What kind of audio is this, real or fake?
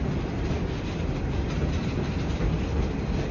real